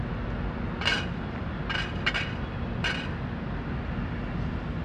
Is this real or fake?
real